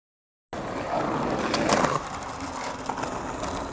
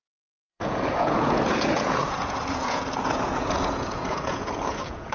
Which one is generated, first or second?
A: second